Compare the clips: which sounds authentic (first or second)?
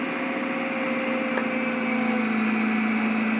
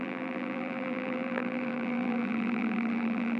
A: first